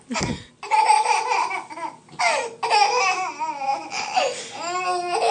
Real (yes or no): yes